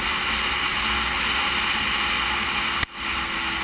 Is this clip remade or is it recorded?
recorded